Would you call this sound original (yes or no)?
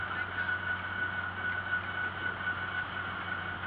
yes